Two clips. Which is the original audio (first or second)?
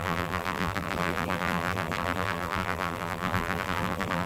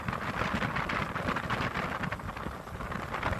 second